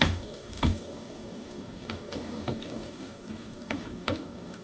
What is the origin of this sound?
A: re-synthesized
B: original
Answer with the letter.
A